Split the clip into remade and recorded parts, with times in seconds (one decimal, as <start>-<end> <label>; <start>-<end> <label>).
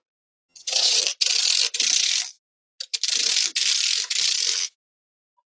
0.0-0.5 recorded; 0.5-1.0 remade; 1.0-5.5 recorded